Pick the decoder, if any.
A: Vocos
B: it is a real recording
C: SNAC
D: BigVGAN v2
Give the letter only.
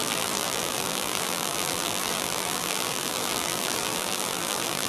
D